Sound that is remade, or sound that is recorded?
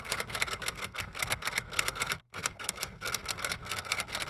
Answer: remade